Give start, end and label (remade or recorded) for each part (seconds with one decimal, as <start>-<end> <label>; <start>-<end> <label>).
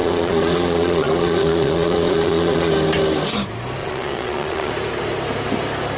0.0-2.7 remade; 2.7-3.8 recorded; 3.8-4.7 remade; 4.7-6.0 recorded